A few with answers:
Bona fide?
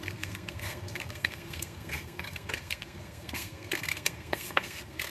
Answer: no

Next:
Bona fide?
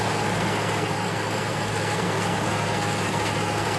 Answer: no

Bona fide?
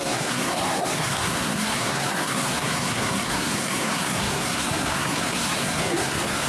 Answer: no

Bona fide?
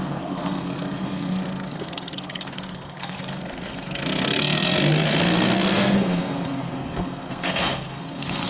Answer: no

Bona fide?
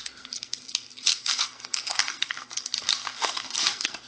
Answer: no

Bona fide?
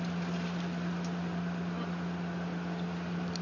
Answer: yes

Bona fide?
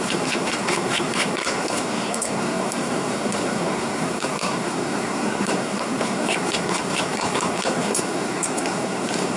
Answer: no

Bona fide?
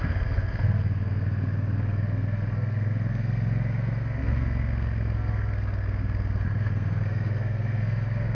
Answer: no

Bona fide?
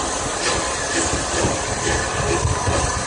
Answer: yes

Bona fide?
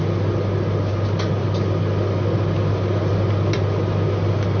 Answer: yes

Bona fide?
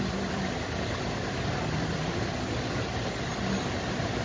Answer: yes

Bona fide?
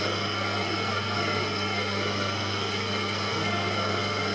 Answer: no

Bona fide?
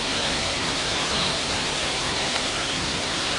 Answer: no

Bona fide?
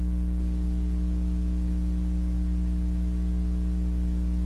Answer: yes